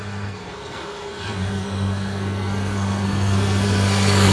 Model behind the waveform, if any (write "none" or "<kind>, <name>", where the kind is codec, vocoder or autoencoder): codec, SNAC